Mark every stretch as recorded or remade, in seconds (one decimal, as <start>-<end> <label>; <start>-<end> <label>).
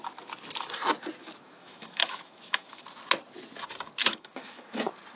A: 0.0-1.2 recorded; 1.2-2.8 remade; 2.8-4.0 recorded; 4.0-4.8 remade; 4.8-5.2 recorded